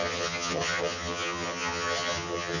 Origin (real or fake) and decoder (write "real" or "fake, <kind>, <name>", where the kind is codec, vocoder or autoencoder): fake, vocoder, HiFi-GAN